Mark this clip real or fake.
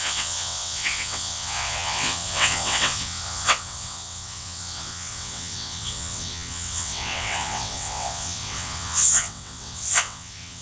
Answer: fake